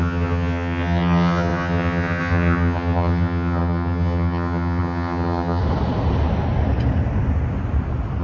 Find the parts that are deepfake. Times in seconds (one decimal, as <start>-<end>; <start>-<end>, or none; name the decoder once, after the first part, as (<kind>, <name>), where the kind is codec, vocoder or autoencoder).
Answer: 0.0-5.6 (vocoder, HiFi-GAN)

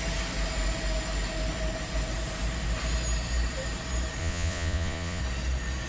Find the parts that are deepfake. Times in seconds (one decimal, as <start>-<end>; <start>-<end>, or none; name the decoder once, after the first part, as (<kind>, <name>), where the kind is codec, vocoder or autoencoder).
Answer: 4.2-5.2 (vocoder, Vocos)

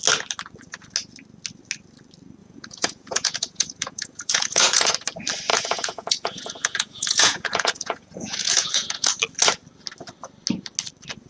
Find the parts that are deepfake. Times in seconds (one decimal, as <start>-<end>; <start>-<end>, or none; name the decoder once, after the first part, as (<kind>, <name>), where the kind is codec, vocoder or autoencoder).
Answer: 2.4-4.9 (vocoder, Vocos); 5.5-9.1